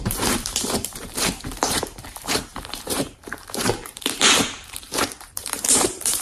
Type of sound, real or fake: fake